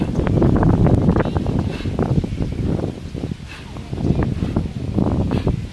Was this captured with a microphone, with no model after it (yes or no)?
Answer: yes